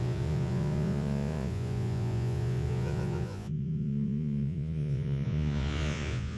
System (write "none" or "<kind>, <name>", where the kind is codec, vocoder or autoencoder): vocoder, Vocos